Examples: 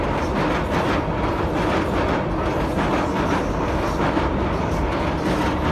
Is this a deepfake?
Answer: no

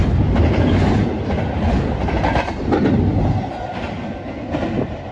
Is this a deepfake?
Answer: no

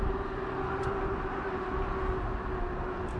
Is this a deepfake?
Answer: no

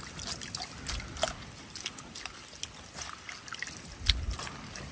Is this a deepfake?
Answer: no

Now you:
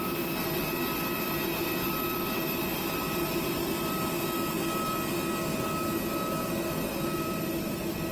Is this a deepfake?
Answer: no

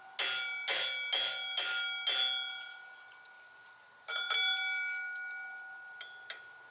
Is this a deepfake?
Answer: no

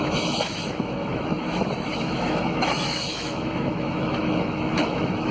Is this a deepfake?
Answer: yes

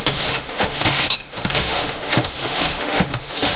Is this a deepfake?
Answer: yes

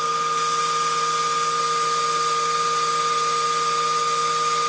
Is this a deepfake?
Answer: no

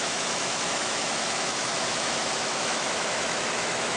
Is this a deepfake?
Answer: yes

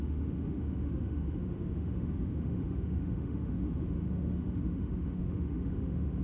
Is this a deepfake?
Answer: yes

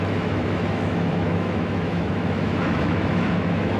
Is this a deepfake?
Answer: yes